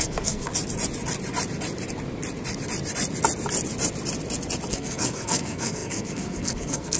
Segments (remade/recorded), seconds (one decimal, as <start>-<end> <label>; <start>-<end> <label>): 0.0-0.5 remade; 0.5-4.7 recorded; 4.7-7.0 remade